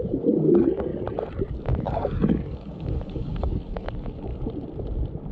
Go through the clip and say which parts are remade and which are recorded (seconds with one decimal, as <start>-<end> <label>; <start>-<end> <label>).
0.0-0.9 remade; 0.9-1.5 recorded; 1.5-4.3 remade; 4.3-5.3 recorded